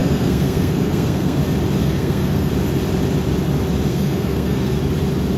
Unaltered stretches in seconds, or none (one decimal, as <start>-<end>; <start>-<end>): 1.4-1.8; 2.5-3.9; 4.8-5.4